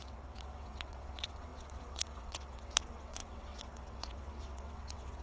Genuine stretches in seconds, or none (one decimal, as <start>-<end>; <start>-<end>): none